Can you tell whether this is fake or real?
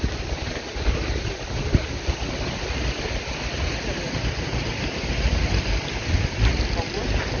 real